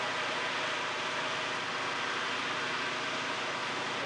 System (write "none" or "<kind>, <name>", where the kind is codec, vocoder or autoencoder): none